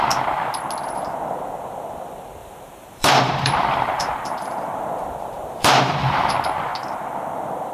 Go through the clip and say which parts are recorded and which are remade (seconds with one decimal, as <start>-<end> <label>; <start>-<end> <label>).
0.0-2.4 recorded; 2.4-6.3 remade; 6.3-7.7 recorded